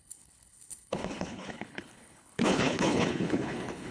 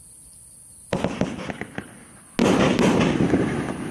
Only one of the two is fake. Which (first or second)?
first